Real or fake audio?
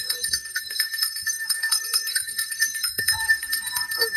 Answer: fake